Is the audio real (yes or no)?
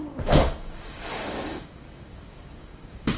no